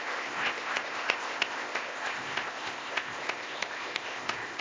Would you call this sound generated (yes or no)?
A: yes